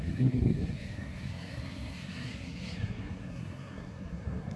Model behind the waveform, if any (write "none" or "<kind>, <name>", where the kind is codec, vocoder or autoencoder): codec, SNAC